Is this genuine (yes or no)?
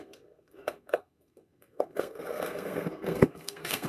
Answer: no